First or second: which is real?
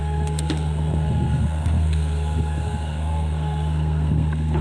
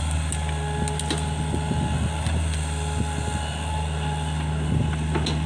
second